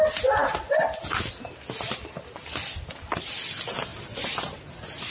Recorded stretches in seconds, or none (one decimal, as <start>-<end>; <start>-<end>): 0.0-5.1